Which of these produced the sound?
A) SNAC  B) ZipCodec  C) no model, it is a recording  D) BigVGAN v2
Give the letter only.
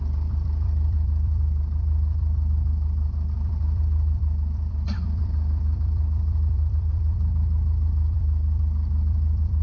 D